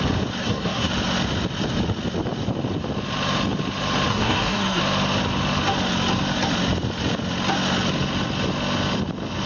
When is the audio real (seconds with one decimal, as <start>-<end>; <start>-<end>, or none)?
0.0-0.4; 0.9-4.1; 4.8-9.5